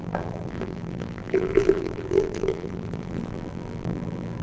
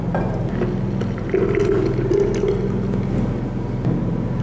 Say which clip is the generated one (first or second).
first